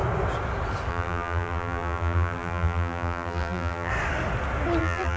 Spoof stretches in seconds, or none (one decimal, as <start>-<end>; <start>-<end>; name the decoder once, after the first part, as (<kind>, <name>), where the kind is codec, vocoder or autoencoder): 0.9-3.9 (vocoder, BigVGAN v2); 4.8-5.2